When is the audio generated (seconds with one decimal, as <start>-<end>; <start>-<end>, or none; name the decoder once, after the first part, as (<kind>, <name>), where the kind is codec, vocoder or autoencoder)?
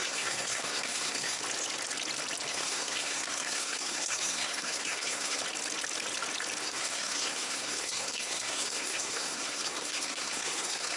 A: 0.0-1.4 (codec, SNAC); 2.5-5.4; 6.6-11.0